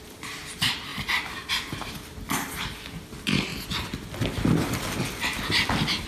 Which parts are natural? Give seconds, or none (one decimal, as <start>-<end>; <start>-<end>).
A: 0.9-1.9; 3.5-5.2